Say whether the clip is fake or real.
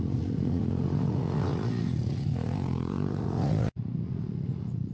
fake